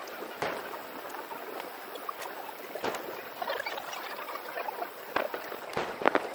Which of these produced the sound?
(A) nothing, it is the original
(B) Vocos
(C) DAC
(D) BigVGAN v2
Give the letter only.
A